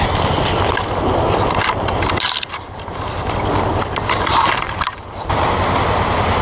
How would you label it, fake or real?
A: real